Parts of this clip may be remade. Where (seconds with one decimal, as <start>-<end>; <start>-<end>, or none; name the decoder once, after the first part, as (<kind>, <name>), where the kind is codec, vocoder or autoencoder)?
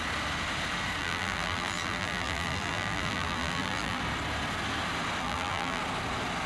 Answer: 1.0-4.0 (vocoder, BigVGAN v2); 5.2-5.8